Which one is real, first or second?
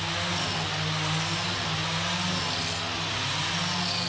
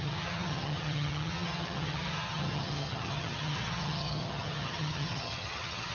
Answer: first